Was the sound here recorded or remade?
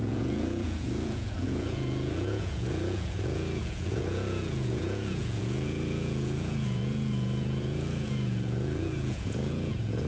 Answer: remade